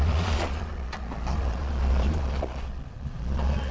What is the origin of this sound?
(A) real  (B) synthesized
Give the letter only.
B